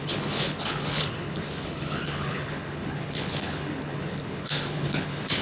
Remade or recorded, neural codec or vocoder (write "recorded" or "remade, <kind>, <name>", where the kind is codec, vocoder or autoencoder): remade, codec, HILCodec